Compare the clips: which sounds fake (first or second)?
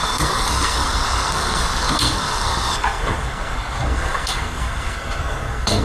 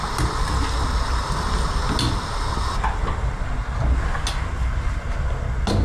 first